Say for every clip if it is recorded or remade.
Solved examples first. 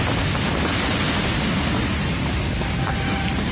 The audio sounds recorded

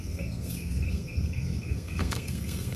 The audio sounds remade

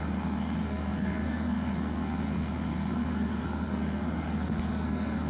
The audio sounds remade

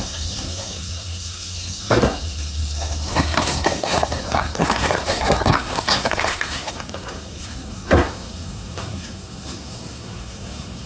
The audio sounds remade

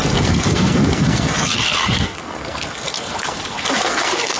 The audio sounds remade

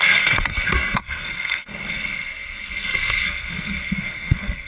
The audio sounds remade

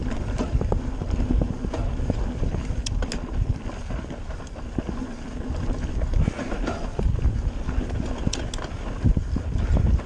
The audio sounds recorded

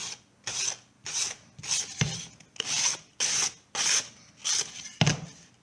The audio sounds recorded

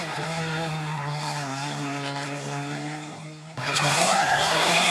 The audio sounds remade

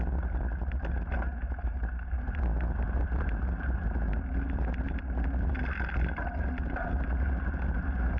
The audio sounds recorded